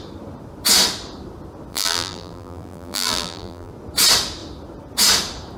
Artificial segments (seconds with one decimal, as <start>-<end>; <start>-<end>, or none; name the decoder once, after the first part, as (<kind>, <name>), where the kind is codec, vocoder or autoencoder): 1.7-3.7 (vocoder, BigVGAN v2)